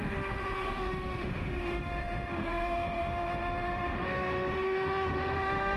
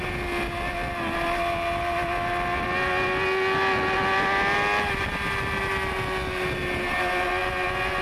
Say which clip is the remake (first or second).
first